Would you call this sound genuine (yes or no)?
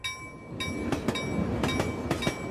yes